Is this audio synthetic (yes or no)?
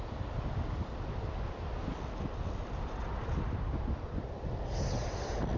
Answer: no